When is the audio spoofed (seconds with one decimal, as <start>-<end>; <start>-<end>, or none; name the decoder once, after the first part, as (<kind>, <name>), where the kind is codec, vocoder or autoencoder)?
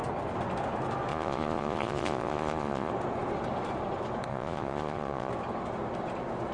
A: 1.1-2.9 (vocoder, Vocos); 4.3-5.3